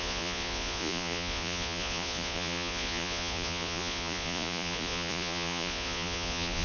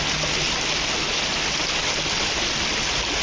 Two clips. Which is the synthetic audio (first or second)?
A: first